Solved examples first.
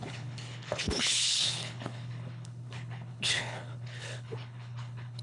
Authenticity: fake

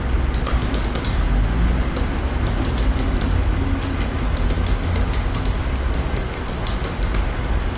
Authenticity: real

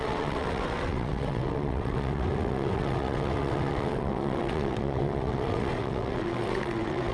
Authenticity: fake